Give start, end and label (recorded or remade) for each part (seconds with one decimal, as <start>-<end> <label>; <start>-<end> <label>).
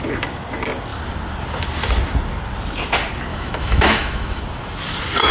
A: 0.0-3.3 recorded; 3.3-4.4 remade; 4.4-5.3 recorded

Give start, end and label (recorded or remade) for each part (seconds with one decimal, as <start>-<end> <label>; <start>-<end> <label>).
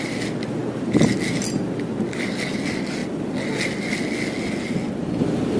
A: 0.0-5.6 recorded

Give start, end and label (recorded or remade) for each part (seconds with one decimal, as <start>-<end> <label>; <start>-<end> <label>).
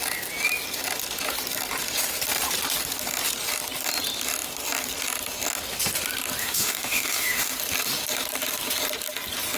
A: 0.0-6.4 recorded; 6.4-7.5 remade; 7.5-9.6 recorded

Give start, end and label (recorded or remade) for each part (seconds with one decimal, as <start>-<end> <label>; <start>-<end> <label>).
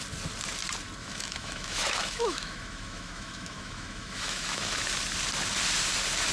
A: 0.0-1.0 recorded; 1.0-4.8 remade; 4.8-6.3 recorded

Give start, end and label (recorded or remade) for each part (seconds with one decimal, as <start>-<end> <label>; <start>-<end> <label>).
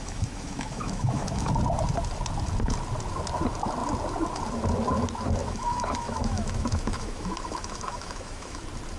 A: 0.0-1.5 remade; 1.5-5.4 recorded; 5.4-8.6 remade; 8.6-9.0 recorded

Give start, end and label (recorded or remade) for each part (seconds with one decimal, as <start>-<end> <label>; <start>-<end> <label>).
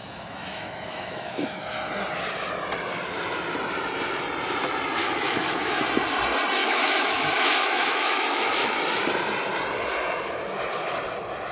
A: 0.0-1.6 remade; 1.6-5.0 recorded; 5.0-5.8 remade; 5.8-6.6 recorded; 6.6-8.8 remade; 8.8-11.5 recorded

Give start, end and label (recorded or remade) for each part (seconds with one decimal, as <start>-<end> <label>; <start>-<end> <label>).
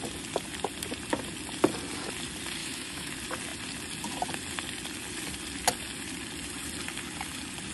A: 0.0-2.6 recorded; 2.6-3.1 remade; 3.1-7.7 recorded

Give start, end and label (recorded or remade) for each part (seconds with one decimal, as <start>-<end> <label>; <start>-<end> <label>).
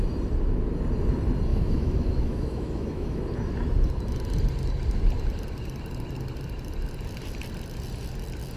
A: 0.0-1.5 recorded; 1.5-3.2 remade; 3.2-8.6 recorded